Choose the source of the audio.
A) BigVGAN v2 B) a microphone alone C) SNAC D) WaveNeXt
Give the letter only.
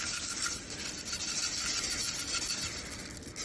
B